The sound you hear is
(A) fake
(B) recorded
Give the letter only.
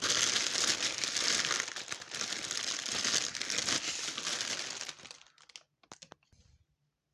B